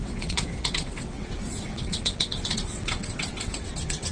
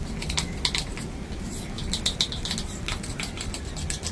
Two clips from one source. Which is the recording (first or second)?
second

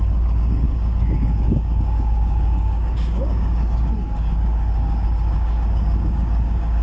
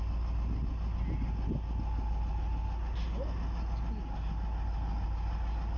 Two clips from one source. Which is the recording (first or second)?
second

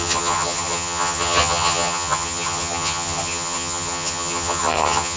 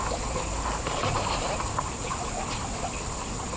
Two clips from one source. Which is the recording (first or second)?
second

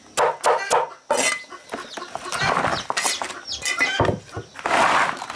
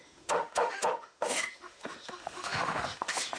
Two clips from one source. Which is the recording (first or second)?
first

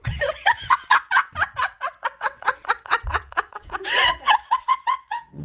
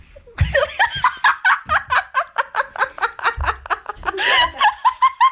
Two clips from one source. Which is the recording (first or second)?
second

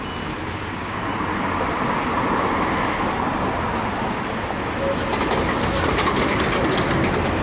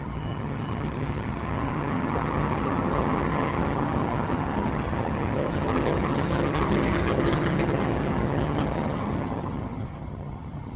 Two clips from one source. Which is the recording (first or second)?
first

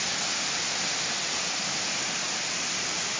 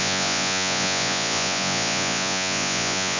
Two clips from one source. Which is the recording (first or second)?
first